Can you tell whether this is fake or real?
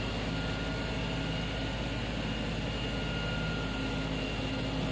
real